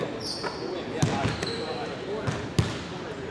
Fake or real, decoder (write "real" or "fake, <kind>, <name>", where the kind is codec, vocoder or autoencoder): real